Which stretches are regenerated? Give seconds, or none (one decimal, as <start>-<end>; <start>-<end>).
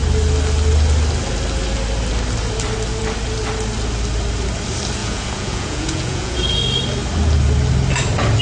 5.0-6.6